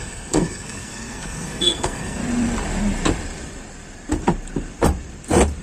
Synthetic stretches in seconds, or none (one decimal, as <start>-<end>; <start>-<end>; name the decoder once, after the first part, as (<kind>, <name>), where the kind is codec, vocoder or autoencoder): 0.0-2.2 (codec, SNAC)